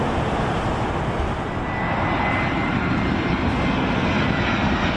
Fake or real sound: real